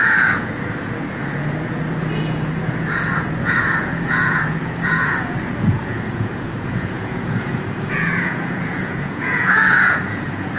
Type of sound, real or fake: fake